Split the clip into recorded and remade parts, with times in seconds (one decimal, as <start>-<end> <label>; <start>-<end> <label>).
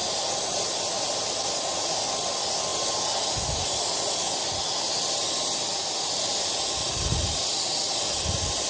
0.0-8.7 recorded